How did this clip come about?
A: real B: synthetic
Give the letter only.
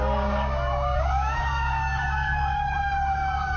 B